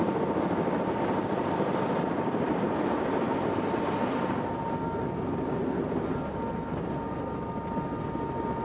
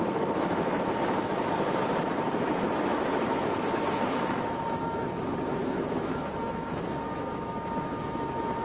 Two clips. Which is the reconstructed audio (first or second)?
second